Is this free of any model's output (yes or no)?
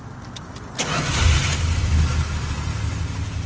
yes